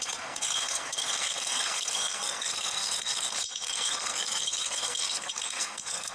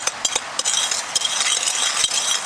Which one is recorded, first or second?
second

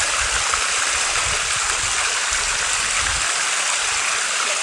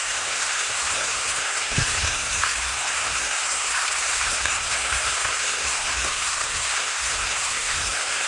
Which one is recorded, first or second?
first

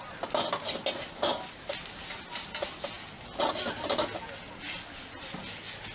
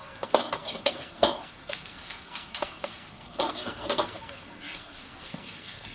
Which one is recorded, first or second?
first